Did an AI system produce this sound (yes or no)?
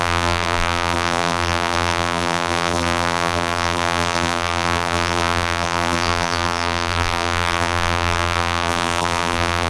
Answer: yes